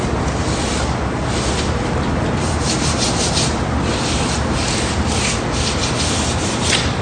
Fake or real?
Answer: real